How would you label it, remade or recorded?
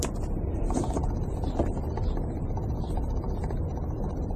remade